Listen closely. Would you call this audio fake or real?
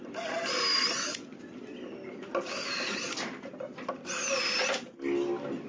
real